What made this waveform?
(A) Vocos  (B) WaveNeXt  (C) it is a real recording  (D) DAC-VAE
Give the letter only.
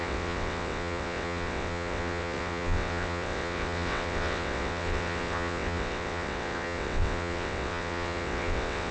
B